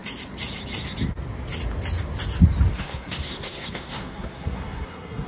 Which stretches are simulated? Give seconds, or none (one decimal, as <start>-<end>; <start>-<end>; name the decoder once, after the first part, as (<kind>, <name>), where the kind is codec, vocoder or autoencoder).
2.7-5.3 (codec, SNAC)